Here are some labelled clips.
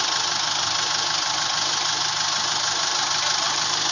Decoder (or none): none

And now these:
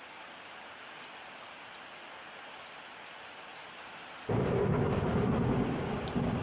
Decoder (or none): none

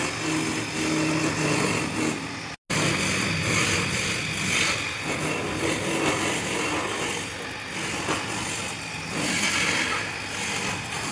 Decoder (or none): none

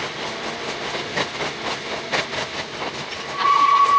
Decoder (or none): none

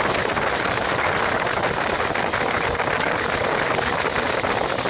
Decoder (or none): none